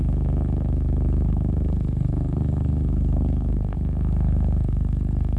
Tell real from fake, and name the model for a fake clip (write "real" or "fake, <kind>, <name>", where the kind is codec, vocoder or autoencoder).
fake, codec, SNAC